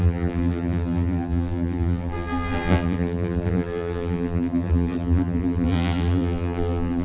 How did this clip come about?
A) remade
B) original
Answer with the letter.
A